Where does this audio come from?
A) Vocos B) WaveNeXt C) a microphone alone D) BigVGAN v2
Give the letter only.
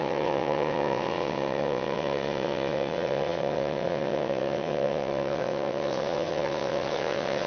B